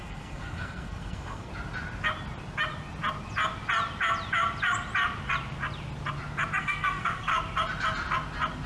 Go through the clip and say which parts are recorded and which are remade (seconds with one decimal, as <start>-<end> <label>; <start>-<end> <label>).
0.0-1.5 remade; 1.5-6.6 recorded; 6.6-7.3 remade; 7.3-8.7 recorded